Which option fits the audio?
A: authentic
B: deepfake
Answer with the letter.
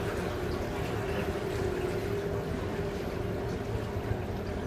A